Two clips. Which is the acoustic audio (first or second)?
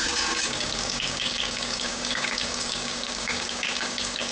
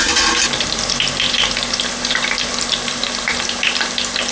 second